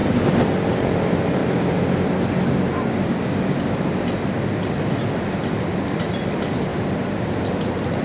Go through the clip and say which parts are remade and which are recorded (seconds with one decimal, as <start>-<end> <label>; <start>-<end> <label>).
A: 0.0-1.4 remade; 1.4-6.2 recorded; 6.2-8.0 remade

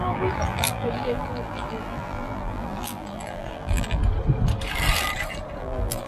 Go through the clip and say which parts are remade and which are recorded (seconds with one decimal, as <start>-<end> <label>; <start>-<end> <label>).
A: 0.0-4.0 remade; 4.0-5.6 recorded; 5.6-6.1 remade

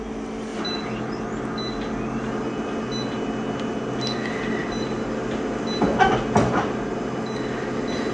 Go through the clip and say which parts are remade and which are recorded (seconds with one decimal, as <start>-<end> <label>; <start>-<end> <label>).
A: 0.0-0.5 recorded; 0.5-1.0 remade; 1.0-8.1 recorded

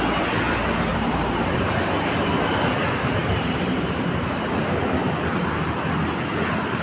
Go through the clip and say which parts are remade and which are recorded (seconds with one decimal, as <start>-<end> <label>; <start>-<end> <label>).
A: 0.0-0.9 recorded; 0.9-1.9 remade; 1.9-3.2 recorded; 3.2-4.2 remade; 4.2-6.8 recorded

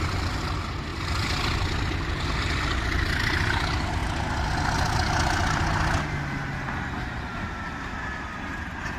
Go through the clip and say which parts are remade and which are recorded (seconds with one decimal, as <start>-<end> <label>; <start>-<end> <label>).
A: 0.0-9.0 recorded